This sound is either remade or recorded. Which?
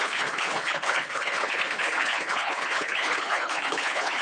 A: remade